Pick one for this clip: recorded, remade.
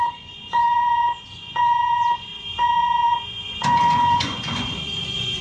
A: remade